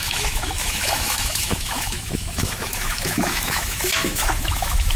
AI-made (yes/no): yes